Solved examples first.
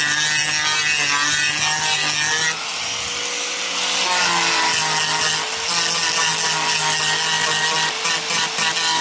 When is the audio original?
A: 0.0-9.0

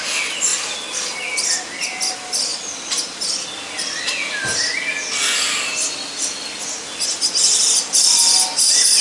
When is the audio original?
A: 0.0-9.0

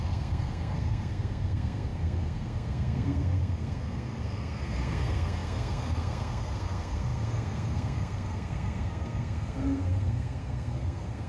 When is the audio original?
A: none

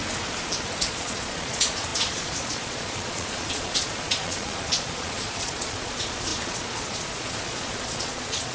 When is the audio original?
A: 0.0-0.8

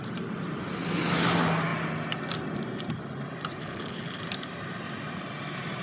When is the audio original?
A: 0.0-3.6; 4.2-5.8

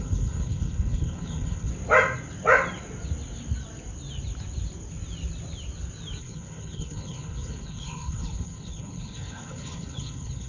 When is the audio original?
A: 1.7-6.2

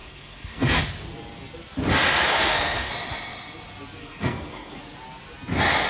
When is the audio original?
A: 0.8-2.3; 2.9-4.0; 4.8-5.9

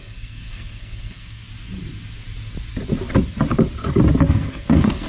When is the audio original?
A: 1.4-4.3